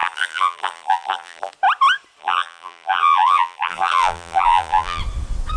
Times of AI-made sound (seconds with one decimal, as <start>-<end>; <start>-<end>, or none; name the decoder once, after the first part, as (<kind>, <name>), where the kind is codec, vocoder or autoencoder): 0.0-1.5 (vocoder, BigVGAN v2); 2.2-5.0